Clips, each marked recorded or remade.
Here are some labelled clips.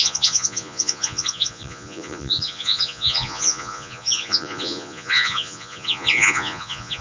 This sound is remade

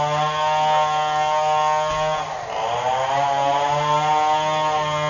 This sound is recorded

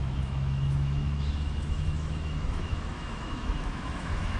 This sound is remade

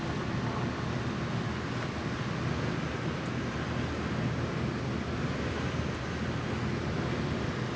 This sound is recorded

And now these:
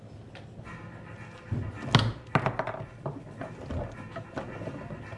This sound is recorded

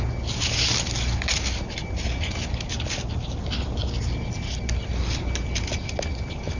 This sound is recorded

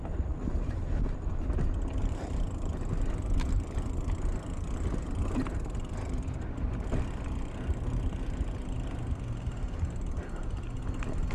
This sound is recorded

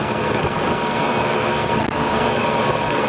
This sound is remade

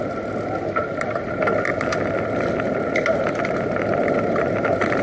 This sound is recorded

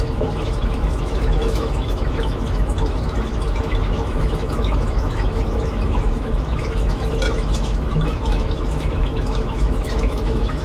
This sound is remade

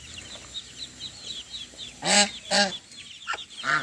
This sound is recorded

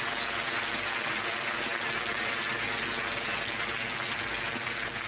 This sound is recorded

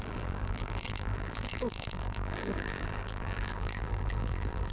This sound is remade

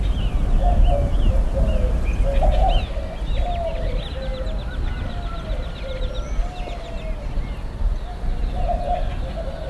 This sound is recorded